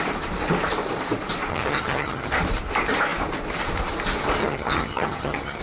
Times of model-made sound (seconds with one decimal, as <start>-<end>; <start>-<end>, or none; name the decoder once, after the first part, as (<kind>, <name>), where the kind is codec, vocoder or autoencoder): 1.5-2.3 (vocoder, HiFi-GAN); 4.4-5.6